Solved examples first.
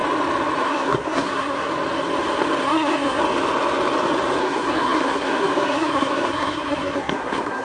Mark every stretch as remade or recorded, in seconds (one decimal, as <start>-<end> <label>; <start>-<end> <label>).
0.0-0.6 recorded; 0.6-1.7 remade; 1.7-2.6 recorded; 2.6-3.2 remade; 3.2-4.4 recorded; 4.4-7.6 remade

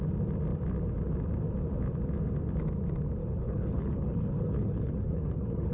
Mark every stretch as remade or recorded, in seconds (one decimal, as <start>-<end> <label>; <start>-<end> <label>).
0.0-3.2 recorded; 3.2-5.7 remade

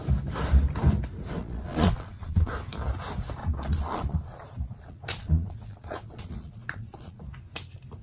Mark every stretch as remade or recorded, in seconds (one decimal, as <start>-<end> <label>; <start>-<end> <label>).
0.0-1.4 recorded; 1.4-2.5 remade; 2.5-3.4 recorded; 3.4-7.2 remade; 7.2-8.0 recorded